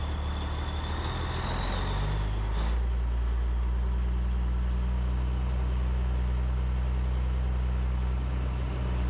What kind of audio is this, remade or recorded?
recorded